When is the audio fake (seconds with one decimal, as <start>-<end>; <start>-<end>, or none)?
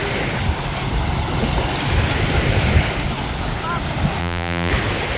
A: 4.2-4.7